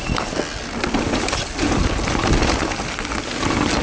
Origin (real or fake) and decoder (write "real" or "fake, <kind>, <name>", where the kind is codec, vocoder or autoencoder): real